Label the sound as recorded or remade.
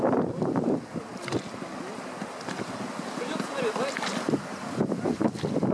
recorded